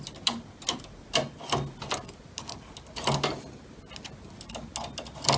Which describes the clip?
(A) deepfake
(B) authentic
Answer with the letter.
B